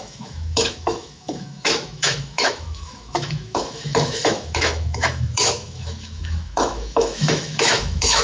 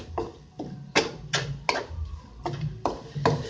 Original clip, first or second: second